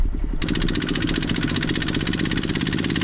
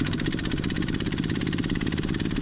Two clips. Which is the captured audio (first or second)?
first